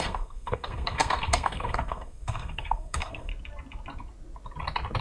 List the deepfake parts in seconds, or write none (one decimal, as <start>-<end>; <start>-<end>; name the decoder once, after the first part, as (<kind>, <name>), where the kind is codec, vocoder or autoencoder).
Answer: 0.0-3.3 (codec, SNAC)